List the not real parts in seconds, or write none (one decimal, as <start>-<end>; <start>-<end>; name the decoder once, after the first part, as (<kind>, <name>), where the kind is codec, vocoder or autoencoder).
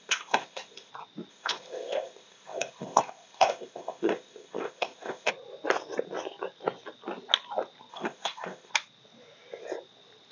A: 0.0-0.9 (codec, ZipCodec); 1.3-5.3; 7.9-8.7